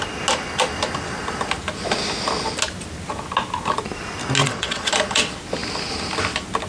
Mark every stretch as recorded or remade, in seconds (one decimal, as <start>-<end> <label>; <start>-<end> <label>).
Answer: 0.0-4.4 recorded; 4.4-4.9 remade; 4.9-6.7 recorded